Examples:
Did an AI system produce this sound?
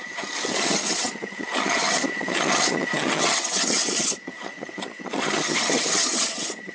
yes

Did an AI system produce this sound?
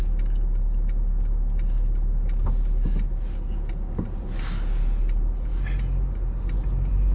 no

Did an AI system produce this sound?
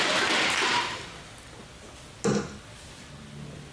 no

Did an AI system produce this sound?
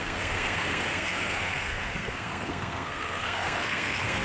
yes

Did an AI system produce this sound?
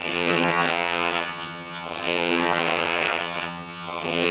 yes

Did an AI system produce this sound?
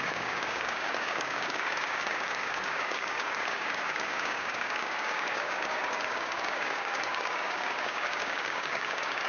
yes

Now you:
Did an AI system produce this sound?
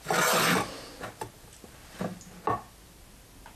no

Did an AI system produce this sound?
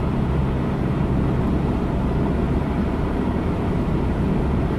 yes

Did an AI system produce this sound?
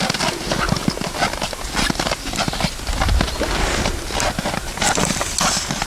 no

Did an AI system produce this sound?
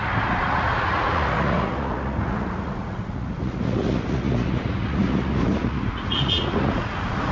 yes